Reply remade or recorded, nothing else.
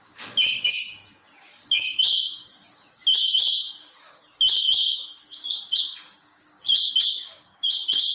remade